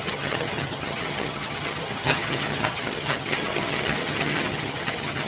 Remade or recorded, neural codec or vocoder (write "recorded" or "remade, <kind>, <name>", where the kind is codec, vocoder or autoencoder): remade, vocoder, HiFi-GAN